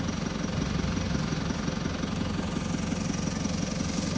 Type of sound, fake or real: real